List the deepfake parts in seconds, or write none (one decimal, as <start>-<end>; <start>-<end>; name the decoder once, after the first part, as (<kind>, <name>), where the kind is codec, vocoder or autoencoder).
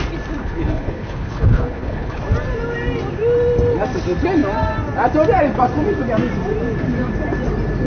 0.4-2.2 (codec, HILCodec)